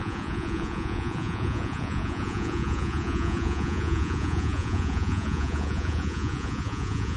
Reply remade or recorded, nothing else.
remade